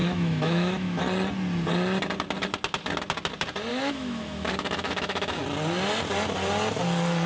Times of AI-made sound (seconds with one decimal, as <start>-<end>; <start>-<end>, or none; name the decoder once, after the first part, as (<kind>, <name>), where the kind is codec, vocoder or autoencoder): 0.0-1.0 (autoencoder, DAC-VAE); 3.7-5.4